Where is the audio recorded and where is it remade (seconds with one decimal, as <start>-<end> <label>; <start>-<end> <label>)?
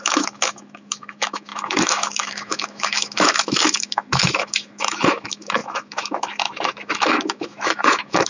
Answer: 0.0-8.3 remade